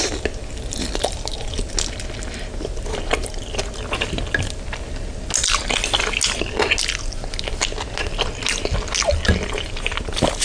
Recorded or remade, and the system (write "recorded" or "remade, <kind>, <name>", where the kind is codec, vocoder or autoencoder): recorded